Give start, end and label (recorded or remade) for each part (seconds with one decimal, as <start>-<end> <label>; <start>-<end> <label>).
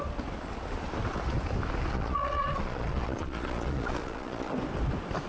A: 0.0-1.9 recorded; 1.9-4.5 remade; 4.5-5.3 recorded